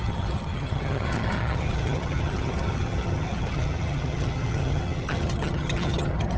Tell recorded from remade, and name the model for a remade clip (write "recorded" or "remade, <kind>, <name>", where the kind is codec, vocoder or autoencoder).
remade, vocoder, HiFi-GAN